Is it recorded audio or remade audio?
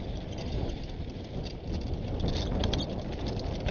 recorded